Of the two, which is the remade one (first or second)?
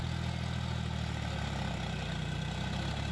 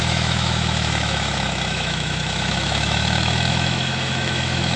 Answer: second